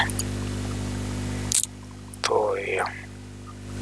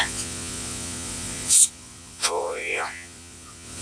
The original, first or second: first